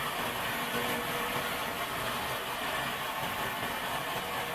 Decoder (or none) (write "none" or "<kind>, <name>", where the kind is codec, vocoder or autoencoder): none